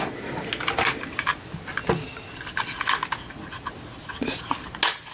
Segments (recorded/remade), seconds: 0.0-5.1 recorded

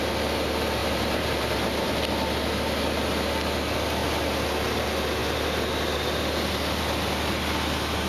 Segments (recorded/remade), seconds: 0.0-0.8 recorded; 0.8-1.9 remade; 1.9-8.1 recorded